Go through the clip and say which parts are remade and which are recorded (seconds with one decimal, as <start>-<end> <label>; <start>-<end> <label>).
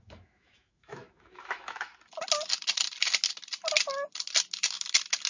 0.0-1.9 remade; 1.9-5.3 recorded